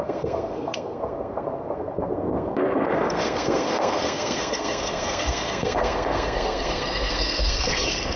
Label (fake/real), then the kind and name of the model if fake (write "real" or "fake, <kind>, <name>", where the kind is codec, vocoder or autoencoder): fake, codec, SNAC